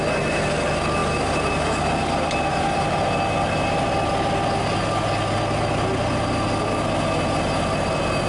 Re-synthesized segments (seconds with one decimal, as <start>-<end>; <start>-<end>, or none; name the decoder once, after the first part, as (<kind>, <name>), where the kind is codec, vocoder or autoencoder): 1.0-4.1 (vocoder, BigVGAN v2)